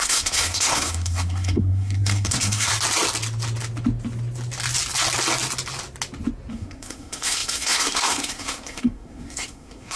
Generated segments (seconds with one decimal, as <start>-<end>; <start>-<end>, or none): 0.0-2.7; 6.5-10.0